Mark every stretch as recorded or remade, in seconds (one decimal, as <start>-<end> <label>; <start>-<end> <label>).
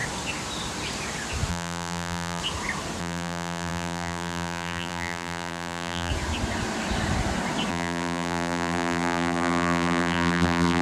0.0-1.5 recorded; 1.5-2.4 remade; 2.4-3.0 recorded; 3.0-6.1 remade; 6.1-7.7 recorded; 7.7-10.8 remade